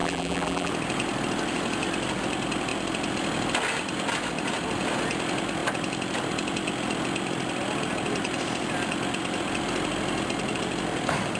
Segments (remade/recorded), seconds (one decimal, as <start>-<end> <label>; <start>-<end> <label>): 0.0-0.7 remade; 0.7-11.4 recorded

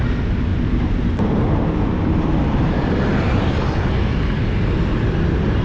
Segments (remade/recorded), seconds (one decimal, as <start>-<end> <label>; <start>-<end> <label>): 0.0-0.5 recorded; 0.5-3.9 remade; 3.9-5.6 recorded